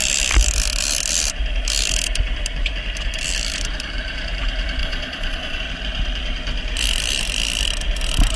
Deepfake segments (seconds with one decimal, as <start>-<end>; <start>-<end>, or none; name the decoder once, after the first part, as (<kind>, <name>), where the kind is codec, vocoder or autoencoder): 4.8-5.6 (vocoder, Vocos)